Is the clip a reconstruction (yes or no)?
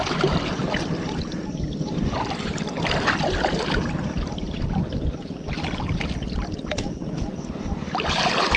no